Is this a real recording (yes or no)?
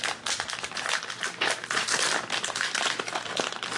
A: no